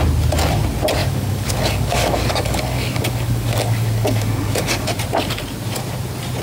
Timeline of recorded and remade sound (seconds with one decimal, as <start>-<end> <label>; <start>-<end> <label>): 0.0-1.0 recorded; 1.0-4.8 remade; 4.8-6.4 recorded